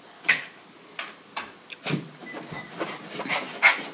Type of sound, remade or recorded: recorded